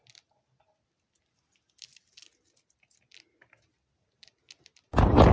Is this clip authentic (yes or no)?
yes